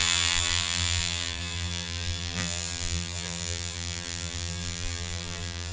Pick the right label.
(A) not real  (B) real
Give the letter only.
A